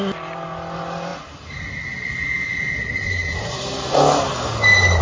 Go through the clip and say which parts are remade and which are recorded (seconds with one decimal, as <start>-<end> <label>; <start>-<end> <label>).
0.0-5.0 recorded